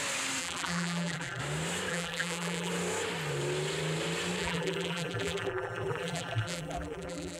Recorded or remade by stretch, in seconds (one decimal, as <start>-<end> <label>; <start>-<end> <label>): 0.0-0.4 recorded; 0.4-1.4 remade; 1.4-1.9 recorded; 1.9-2.7 remade; 2.7-4.4 recorded; 4.4-7.4 remade